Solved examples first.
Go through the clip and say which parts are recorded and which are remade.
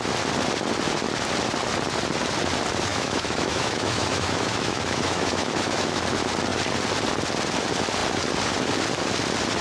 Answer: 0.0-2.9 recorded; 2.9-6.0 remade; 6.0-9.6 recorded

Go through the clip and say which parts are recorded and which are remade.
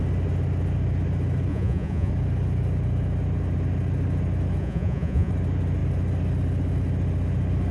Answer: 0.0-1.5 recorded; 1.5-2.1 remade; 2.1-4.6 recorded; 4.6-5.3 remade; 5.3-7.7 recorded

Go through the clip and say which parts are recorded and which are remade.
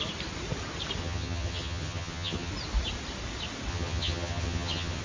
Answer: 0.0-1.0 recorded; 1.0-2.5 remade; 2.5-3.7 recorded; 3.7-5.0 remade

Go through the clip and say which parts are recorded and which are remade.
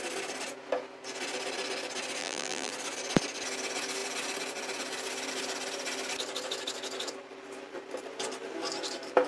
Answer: 0.0-2.2 recorded; 2.2-2.7 remade; 2.7-9.3 recorded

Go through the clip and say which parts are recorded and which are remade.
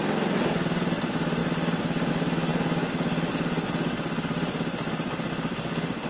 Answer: 0.0-6.1 recorded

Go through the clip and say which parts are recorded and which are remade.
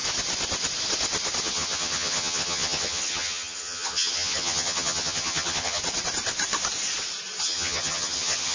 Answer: 0.0-1.4 recorded; 1.4-5.8 remade; 5.8-7.4 recorded; 7.4-8.5 remade